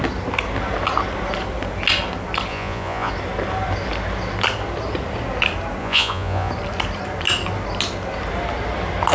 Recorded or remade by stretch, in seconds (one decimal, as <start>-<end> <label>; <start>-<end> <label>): 0.0-2.5 recorded; 2.5-3.1 remade; 3.1-5.8 recorded; 5.8-6.5 remade; 6.5-9.1 recorded